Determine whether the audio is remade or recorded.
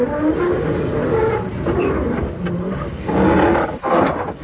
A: recorded